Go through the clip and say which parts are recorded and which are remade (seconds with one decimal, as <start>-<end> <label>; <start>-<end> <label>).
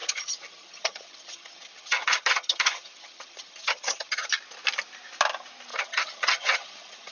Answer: 0.0-4.3 remade; 4.3-5.7 recorded; 5.7-7.1 remade